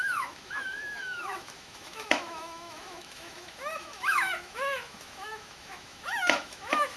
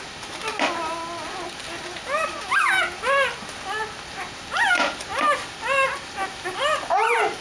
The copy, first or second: first